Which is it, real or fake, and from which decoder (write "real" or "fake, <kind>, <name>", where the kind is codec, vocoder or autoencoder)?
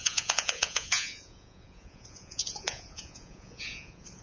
fake, vocoder, Vocos